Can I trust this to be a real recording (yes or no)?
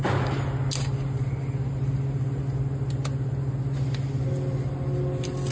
yes